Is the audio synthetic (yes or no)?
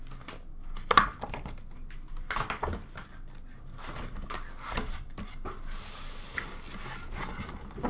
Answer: no